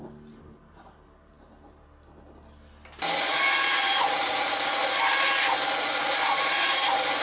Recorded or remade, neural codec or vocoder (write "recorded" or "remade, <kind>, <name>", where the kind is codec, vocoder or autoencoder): recorded